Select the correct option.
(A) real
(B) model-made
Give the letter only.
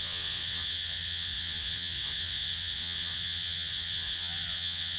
B